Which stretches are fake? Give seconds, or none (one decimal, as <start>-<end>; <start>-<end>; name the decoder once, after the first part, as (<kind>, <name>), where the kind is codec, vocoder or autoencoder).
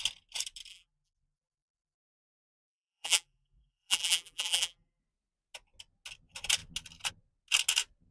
0.7-5.0 (vocoder, BigVGAN v2)